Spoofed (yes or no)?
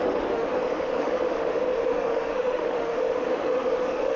yes